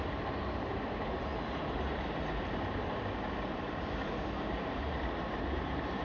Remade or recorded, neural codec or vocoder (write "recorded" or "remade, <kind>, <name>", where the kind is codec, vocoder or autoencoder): remade, vocoder, BigVGAN v2